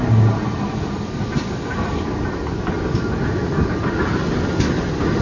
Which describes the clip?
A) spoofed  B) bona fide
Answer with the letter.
B